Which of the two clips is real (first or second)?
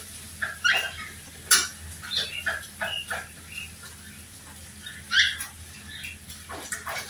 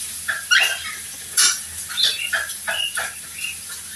first